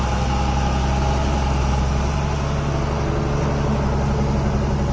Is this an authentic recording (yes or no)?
yes